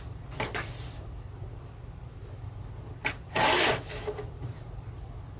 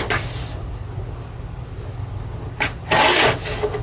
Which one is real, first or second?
second